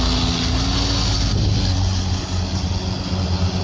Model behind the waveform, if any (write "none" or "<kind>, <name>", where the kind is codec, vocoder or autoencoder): none